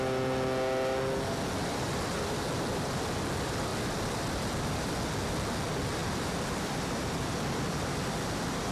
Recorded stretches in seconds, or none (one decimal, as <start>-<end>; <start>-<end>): 0.0-1.6; 3.0-6.0; 8.1-8.7

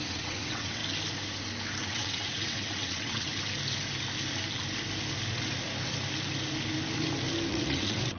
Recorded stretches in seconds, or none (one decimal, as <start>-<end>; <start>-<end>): 0.8-1.8; 3.3-7.5

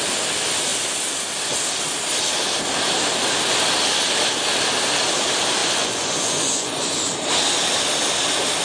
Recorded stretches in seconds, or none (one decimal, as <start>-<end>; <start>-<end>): 0.0-5.6; 6.9-8.6

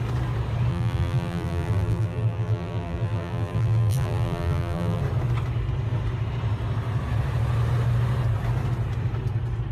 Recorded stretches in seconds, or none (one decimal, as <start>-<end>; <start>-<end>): 0.0-0.7; 5.0-9.7

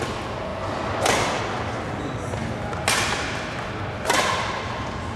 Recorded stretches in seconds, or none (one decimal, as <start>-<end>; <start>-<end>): 0.0-0.5; 1.4-5.2

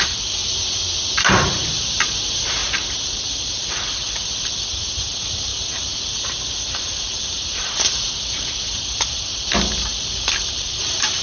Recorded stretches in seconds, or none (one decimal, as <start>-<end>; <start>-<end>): 0.4-1.3

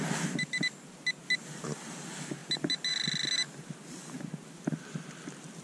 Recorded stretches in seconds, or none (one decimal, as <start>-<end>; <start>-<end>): 0.0-5.6